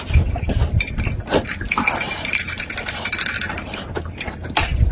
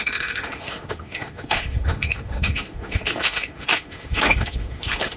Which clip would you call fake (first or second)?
second